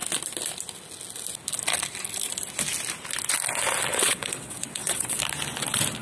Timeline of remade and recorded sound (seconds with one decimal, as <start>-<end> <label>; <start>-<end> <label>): 0.0-3.9 recorded; 3.9-5.2 remade; 5.2-6.0 recorded

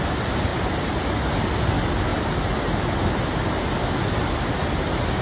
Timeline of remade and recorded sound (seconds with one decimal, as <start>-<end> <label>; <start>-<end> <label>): 0.0-5.2 recorded

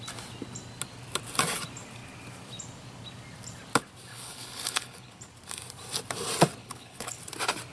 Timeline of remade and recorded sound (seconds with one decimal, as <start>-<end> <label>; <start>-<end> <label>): 0.0-4.1 recorded; 4.1-5.2 remade; 5.2-6.6 recorded; 6.6-7.2 remade; 7.2-7.7 recorded

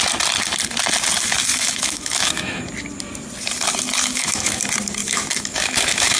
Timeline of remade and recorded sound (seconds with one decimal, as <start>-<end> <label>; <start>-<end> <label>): 0.0-1.5 recorded; 1.5-2.6 remade; 2.6-4.0 recorded; 4.0-4.6 remade; 4.6-5.0 recorded; 5.0-6.2 remade

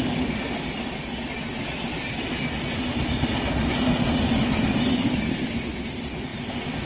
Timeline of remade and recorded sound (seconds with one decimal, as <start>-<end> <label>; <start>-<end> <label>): 0.0-6.9 recorded